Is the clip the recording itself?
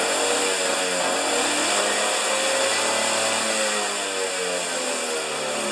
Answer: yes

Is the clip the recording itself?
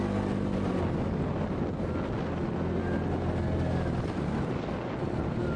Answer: yes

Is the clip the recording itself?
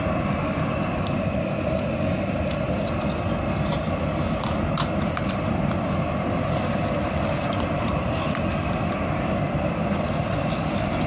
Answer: no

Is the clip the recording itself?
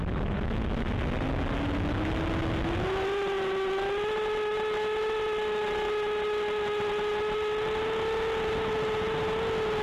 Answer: yes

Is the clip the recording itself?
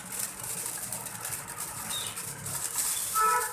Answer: yes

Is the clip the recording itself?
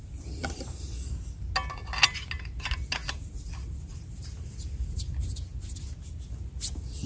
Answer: yes